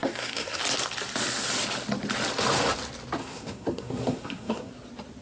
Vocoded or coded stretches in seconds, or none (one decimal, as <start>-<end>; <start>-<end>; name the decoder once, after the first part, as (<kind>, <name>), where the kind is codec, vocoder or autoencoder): 0.0-0.6 (codec, SNAC); 3.2-4.7